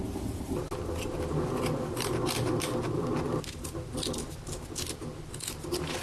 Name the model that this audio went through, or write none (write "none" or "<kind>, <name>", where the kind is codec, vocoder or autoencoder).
none